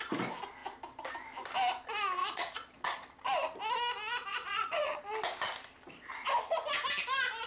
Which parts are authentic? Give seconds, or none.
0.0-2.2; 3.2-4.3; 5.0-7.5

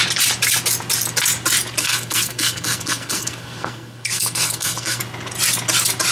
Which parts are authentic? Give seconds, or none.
0.0-1.8; 5.0-6.1

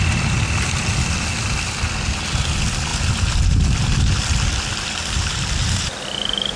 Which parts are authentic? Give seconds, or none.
0.0-6.6

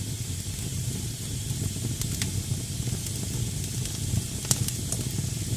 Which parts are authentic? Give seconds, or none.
0.0-0.7; 2.0-5.6

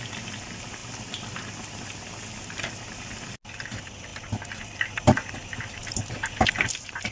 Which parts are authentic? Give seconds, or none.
0.0-7.1

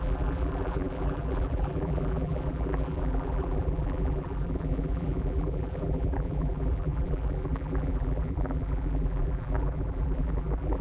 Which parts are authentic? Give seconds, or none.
none

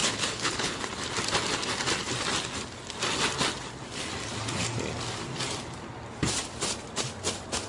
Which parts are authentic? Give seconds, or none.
0.8-7.7